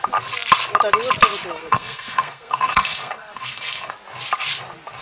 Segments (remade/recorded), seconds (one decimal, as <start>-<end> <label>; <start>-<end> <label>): 0.0-1.6 recorded; 1.6-3.9 remade; 3.9-5.0 recorded